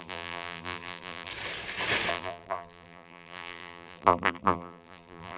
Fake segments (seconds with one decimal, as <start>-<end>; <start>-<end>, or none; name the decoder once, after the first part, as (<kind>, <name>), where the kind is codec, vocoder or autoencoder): 0.0-1.3 (vocoder, BigVGAN v2); 2.1-5.4